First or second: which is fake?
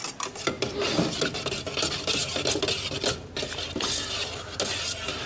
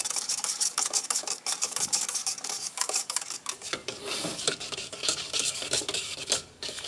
second